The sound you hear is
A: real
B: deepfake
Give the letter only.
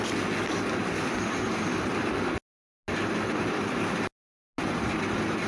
A